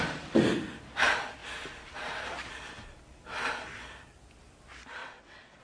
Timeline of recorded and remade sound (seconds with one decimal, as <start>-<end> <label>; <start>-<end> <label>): 0.0-5.0 recorded; 5.0-5.6 remade